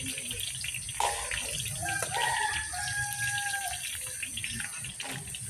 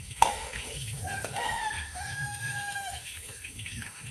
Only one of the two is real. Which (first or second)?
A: first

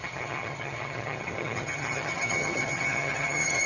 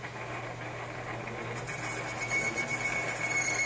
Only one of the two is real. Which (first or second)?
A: second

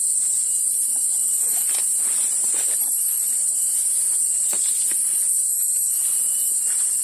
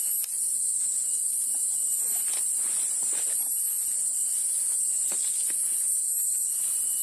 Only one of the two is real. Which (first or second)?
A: second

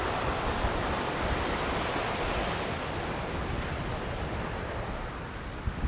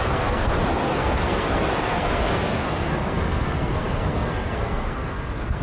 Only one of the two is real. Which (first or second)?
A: first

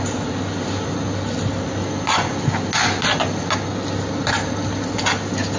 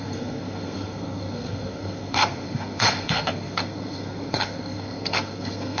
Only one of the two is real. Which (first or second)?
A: first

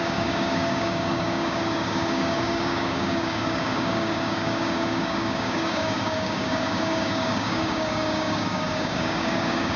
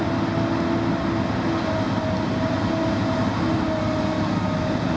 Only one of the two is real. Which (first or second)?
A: second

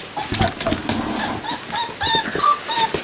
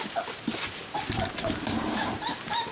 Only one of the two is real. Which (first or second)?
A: first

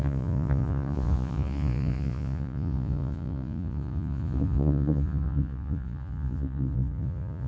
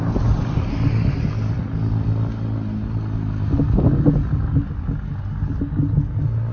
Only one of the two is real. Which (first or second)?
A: second